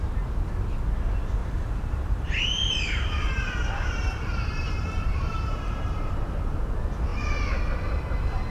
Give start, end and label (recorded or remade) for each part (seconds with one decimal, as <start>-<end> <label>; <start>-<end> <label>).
0.0-1.4 recorded; 1.4-6.1 remade; 6.1-8.5 recorded